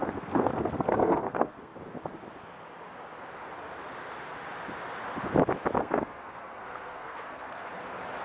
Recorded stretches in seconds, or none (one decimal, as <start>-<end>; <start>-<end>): 1.7-5.8; 7.7-8.2